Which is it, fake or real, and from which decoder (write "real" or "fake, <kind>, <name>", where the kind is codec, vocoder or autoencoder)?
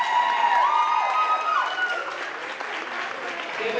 real